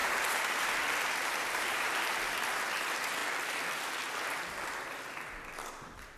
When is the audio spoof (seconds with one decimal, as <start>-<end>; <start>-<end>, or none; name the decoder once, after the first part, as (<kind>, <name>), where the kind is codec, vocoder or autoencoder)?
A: 0.0-0.7 (vocoder, BigVGAN v2); 1.2-2.1

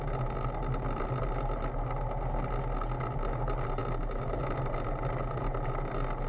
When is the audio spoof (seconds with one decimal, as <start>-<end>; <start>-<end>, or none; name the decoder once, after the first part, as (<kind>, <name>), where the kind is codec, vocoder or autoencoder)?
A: none

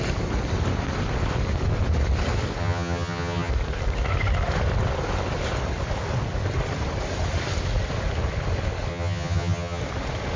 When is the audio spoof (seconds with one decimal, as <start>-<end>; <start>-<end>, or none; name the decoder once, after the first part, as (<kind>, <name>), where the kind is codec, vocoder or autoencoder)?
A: 2.6-3.5 (vocoder, HiFi-GAN); 8.9-9.8

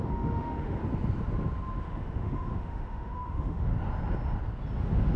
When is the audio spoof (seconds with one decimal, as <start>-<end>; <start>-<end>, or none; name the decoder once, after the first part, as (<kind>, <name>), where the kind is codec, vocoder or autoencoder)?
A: 0.0-0.8 (autoencoder, DAC-VAE); 1.8-3.7; 4.8-5.2

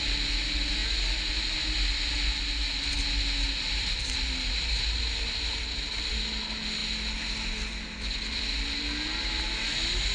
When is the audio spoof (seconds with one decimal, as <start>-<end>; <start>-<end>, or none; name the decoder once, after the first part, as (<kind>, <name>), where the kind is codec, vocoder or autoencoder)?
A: none

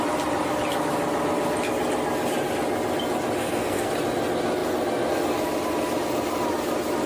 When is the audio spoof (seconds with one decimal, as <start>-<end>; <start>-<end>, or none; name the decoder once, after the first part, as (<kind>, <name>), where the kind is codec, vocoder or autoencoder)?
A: 3.4-3.9 (codec, SNAC)

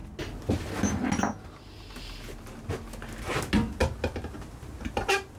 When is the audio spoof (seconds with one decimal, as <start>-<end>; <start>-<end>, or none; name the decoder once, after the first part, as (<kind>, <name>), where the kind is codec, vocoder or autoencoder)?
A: none

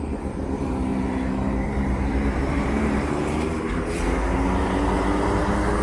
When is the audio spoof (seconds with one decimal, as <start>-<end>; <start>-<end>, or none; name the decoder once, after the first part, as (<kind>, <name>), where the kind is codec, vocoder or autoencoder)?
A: 0.9-3.8 (vocoder, BigVGAN v2)